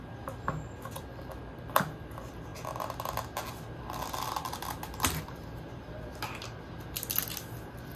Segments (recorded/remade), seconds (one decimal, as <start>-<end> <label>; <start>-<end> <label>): 0.0-8.0 recorded